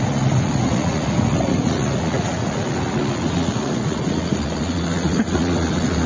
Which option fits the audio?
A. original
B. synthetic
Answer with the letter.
B